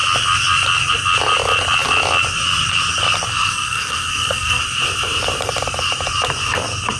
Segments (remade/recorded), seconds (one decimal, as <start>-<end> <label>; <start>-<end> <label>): 0.0-3.3 recorded; 3.3-4.6 remade; 4.6-7.0 recorded